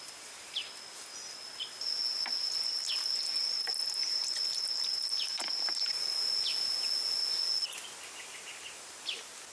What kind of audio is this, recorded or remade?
recorded